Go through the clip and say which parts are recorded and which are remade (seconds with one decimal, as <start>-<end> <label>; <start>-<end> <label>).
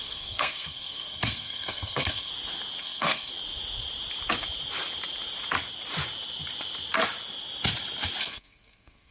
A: 0.0-2.3 remade; 2.3-2.8 recorded; 2.8-3.3 remade; 3.3-8.2 recorded; 8.2-9.1 remade